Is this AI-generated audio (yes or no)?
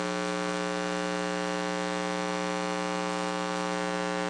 no